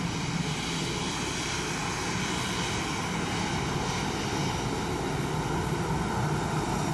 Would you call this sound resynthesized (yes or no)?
no